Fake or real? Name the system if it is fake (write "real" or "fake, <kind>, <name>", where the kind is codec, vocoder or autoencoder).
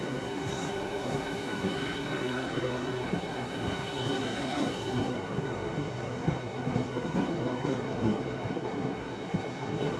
fake, codec, SNAC